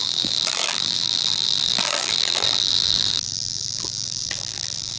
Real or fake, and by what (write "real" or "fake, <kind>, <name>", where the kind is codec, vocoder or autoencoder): fake, vocoder, BigVGAN v2